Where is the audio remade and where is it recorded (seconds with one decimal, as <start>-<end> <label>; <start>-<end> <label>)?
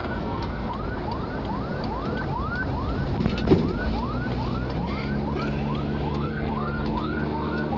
0.0-0.7 remade; 0.7-6.1 recorded; 6.1-7.8 remade